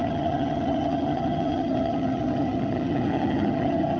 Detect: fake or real fake